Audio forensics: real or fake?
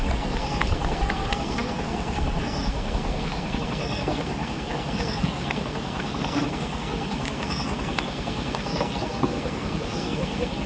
fake